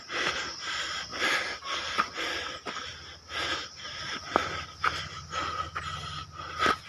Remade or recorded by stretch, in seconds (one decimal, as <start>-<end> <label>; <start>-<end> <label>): 0.0-6.9 recorded